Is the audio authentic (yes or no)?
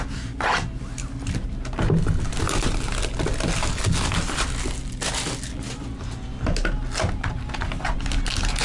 yes